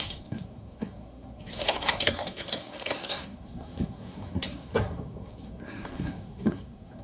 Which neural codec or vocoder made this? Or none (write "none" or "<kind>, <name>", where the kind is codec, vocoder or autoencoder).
codec, SNAC